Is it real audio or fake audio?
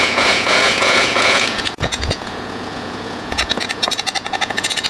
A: fake